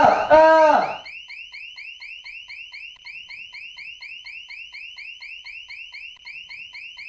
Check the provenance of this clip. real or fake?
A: real